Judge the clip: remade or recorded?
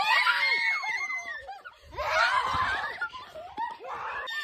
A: recorded